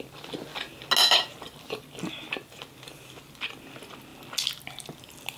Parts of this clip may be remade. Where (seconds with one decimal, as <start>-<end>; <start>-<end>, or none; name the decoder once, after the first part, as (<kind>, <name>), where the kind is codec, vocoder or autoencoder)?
none